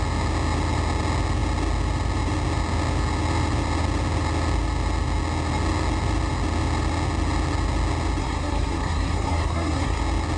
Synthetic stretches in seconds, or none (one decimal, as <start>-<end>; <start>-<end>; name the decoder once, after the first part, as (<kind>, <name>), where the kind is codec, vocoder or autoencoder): 8.2-10.0 (codec, SNAC)